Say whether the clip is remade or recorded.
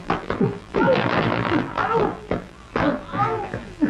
remade